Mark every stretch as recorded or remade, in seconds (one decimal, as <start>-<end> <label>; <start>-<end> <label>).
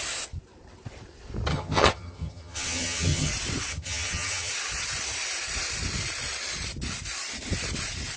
0.0-1.5 recorded; 1.5-3.3 remade; 3.3-3.7 recorded; 3.7-4.5 remade; 4.5-8.2 recorded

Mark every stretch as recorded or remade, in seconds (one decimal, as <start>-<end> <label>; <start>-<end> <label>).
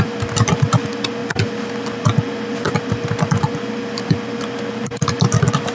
0.0-5.7 recorded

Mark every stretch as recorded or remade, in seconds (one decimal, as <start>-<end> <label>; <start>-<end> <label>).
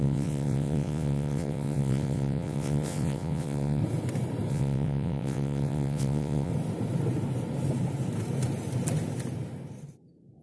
0.0-3.8 remade; 3.8-4.5 recorded; 4.5-6.5 remade; 6.5-10.4 recorded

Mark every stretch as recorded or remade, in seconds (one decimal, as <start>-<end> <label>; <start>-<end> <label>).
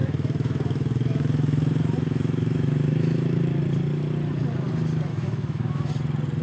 0.0-3.6 remade; 3.6-5.1 recorded; 5.1-5.9 remade; 5.9-6.4 recorded